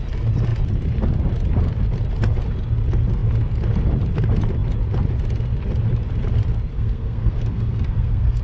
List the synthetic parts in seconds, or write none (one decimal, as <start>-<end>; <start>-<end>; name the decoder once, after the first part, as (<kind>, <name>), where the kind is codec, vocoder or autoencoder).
6.7-8.4 (codec, SNAC)